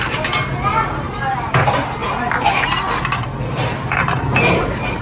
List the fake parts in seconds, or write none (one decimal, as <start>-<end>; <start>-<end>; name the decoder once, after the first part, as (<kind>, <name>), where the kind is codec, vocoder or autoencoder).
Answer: 0.7-1.2 (vocoder, BigVGAN v2)